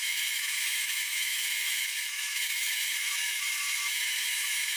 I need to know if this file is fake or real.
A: fake